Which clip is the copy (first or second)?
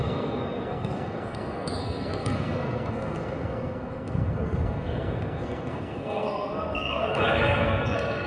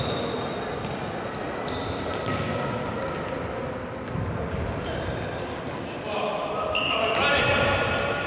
first